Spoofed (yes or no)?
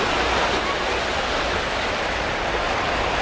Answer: no